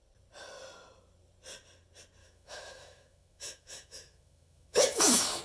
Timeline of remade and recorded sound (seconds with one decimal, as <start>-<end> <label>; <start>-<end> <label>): 0.0-2.2 recorded; 2.2-5.4 remade